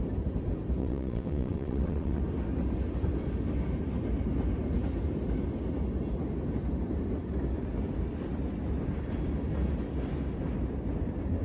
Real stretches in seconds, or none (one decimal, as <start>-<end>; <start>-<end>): 0.0-0.8; 2.2-11.4

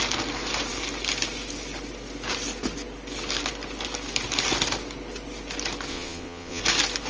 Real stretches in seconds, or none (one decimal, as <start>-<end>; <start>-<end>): 0.0-5.9; 6.6-7.1

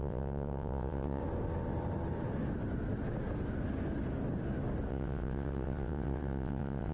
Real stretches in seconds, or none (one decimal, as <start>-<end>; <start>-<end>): 1.2-4.9